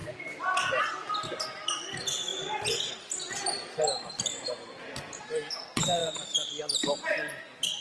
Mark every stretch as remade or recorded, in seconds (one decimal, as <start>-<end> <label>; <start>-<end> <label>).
0.0-0.8 remade; 0.8-6.0 recorded; 6.0-6.5 remade; 6.5-7.8 recorded